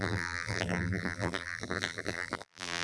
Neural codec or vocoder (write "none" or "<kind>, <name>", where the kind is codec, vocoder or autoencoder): vocoder, BigVGAN v2